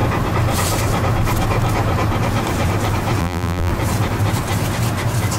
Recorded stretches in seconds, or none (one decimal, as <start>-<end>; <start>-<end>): 0.0-3.2; 3.7-5.4